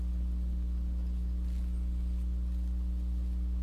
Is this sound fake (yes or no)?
no